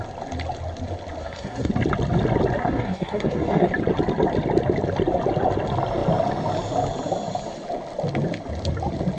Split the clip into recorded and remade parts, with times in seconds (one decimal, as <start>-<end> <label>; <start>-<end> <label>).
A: 0.0-1.2 recorded; 1.2-1.7 remade; 1.7-2.6 recorded; 2.6-3.7 remade; 3.7-9.2 recorded